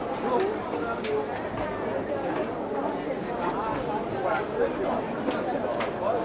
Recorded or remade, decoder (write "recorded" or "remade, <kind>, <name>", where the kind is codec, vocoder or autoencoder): recorded